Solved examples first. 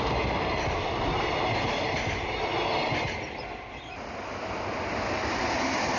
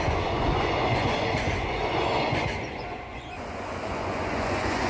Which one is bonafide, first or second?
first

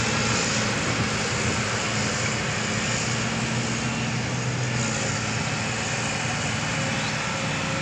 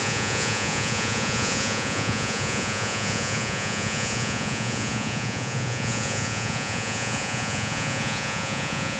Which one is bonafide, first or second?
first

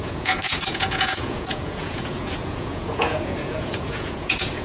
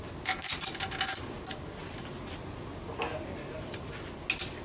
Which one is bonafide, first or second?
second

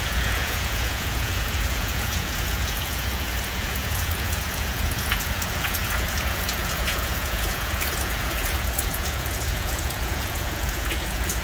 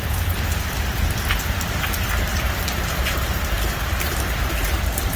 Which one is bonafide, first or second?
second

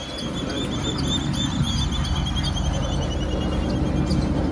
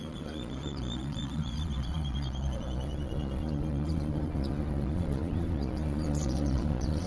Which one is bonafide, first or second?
first